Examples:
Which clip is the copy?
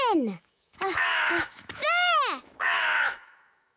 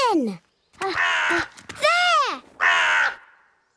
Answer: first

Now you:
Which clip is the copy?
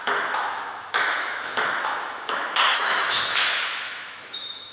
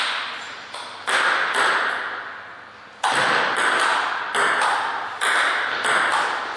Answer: first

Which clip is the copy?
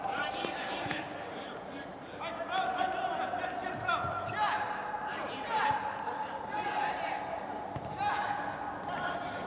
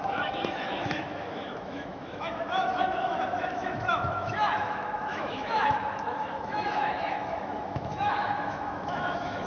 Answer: second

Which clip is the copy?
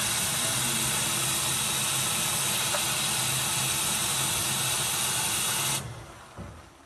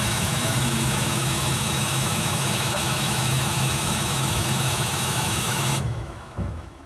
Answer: second